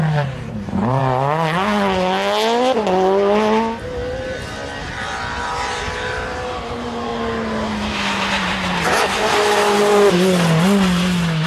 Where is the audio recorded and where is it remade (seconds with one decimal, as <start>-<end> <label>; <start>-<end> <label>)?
0.0-1.0 remade; 1.0-5.4 recorded; 5.4-7.1 remade; 7.1-8.3 recorded; 8.3-9.9 remade; 9.9-11.5 recorded